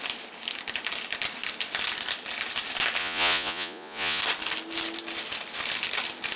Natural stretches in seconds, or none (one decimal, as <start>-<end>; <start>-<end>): 0.0-3.0; 4.2-6.4

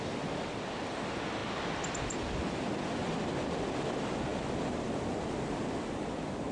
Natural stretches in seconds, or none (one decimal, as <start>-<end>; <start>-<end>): 0.0-6.5

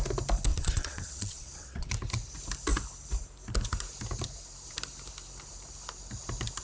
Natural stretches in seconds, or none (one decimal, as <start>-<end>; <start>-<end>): 0.0-0.5; 1.9-6.6

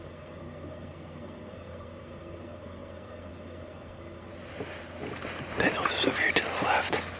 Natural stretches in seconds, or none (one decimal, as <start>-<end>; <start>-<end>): 4.3-7.2

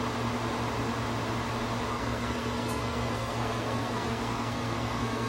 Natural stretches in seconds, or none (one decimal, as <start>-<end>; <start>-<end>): 0.0-1.9

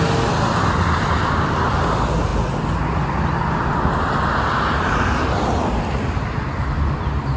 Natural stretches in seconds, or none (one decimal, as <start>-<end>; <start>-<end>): 0.0-7.4